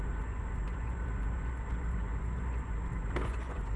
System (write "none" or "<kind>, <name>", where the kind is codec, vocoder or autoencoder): vocoder, Vocos